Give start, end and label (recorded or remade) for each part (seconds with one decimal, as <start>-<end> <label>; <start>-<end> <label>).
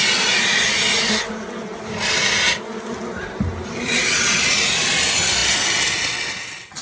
0.0-6.8 recorded